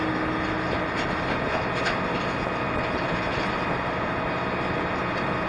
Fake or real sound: real